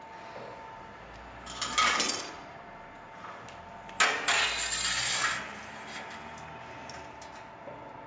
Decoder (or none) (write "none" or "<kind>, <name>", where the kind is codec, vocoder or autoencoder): none